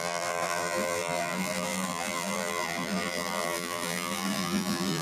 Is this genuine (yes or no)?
no